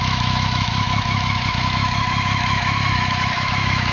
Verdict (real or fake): fake